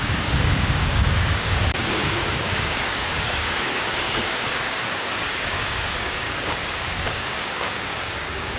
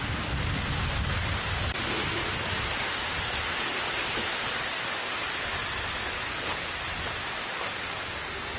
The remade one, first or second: first